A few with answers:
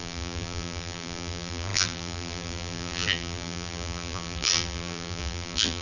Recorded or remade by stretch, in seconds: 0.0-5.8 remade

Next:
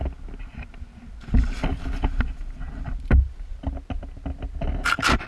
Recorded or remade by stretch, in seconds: 0.0-5.3 recorded

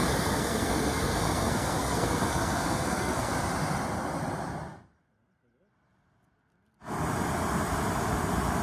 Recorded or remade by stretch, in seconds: 0.0-3.3 remade; 3.3-8.6 recorded

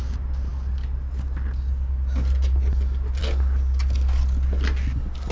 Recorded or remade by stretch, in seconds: 0.0-5.3 recorded

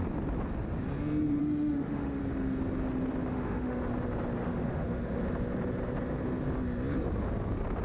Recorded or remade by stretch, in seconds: 0.0-1.4 recorded; 1.4-2.2 remade; 2.2-3.3 recorded; 3.3-3.9 remade; 3.9-4.5 recorded; 4.5-5.2 remade; 5.2-7.8 recorded